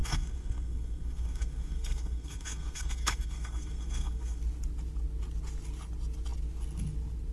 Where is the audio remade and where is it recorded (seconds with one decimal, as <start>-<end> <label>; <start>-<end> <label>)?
0.0-4.4 remade; 4.4-7.3 recorded